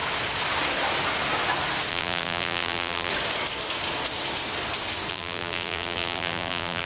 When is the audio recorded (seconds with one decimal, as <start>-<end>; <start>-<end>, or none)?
0.0-1.9; 3.1-5.1